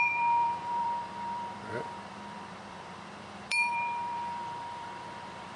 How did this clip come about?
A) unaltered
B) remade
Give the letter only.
B